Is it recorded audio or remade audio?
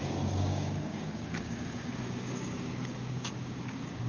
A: remade